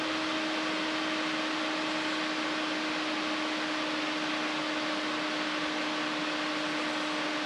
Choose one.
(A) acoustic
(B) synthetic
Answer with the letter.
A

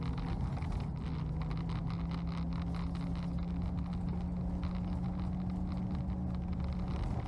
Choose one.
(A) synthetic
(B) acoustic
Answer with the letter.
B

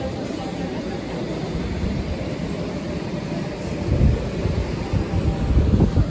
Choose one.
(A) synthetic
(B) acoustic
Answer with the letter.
B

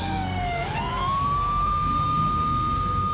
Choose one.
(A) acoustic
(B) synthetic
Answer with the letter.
B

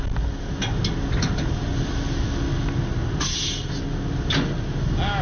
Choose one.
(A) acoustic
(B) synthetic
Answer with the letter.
A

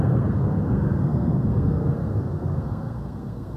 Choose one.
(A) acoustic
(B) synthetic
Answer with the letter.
B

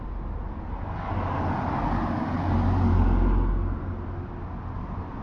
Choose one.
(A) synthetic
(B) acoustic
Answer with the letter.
B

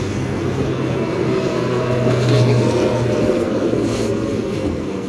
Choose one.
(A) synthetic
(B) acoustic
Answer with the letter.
A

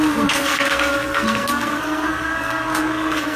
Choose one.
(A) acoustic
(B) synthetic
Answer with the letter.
B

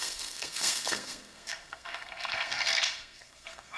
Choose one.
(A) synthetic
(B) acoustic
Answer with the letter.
A